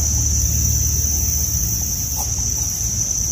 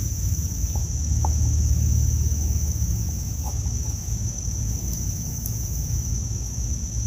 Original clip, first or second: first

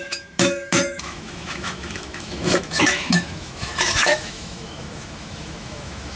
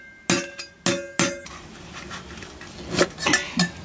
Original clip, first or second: second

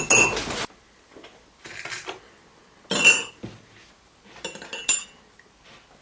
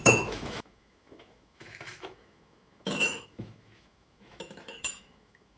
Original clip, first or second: first